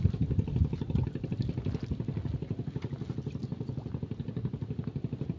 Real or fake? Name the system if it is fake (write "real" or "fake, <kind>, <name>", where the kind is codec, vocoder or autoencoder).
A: real